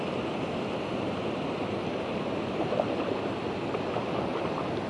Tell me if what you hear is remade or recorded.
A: recorded